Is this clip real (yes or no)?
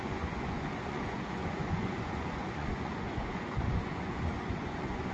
no